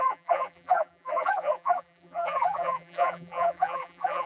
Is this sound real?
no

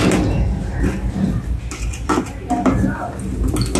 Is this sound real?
yes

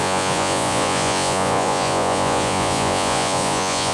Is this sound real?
no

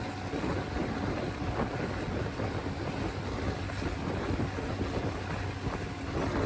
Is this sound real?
yes